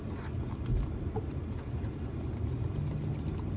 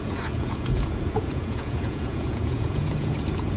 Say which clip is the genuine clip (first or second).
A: first